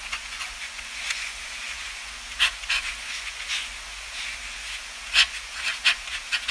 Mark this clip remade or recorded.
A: remade